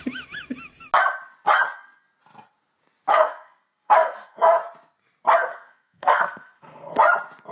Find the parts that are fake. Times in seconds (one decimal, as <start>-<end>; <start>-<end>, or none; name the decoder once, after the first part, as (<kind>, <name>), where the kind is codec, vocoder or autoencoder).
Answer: 3.1-4.6 (codec, SNAC); 5.5-6.9